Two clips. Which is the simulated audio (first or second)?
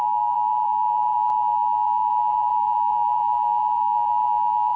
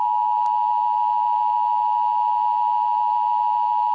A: first